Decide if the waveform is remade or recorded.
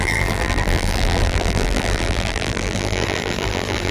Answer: remade